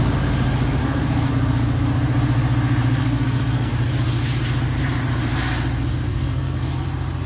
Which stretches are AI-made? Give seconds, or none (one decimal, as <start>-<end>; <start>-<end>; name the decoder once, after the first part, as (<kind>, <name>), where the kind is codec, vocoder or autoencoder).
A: 0.8-1.3 (codec, SNAC); 3.0-3.7; 6.1-6.7